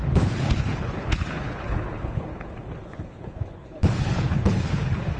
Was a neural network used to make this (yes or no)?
yes